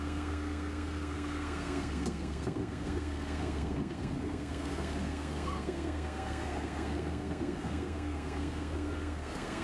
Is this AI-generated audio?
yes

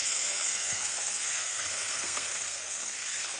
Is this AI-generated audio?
yes